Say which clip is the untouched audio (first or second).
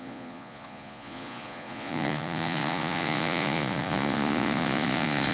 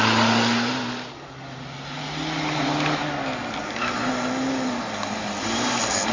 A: second